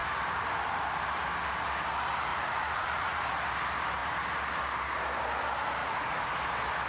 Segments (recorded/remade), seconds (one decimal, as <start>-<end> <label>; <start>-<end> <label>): 0.0-2.3 recorded; 2.3-3.2 remade; 3.2-5.8 recorded; 5.8-6.3 remade; 6.3-6.9 recorded